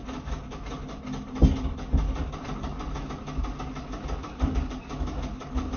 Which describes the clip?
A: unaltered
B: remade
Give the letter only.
A